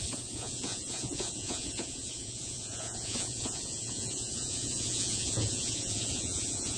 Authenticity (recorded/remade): remade